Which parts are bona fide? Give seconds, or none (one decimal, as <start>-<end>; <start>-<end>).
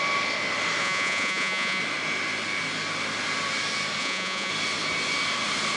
0.0-0.8; 1.8-4.0; 4.5-5.8